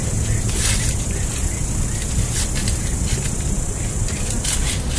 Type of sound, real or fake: real